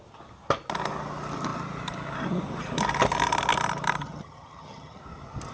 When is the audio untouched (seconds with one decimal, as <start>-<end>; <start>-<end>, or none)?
0.0-4.0; 5.0-5.5